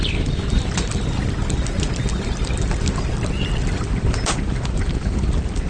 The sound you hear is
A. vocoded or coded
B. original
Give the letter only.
B